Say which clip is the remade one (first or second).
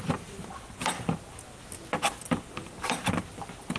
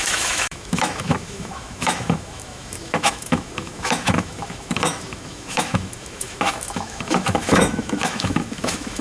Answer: second